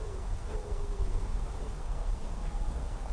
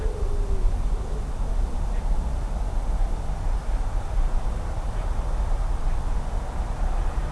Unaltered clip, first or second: second